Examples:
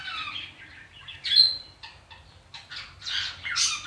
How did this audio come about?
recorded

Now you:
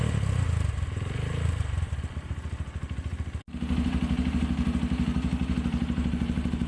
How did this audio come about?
recorded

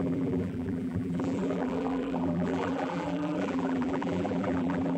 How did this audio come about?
remade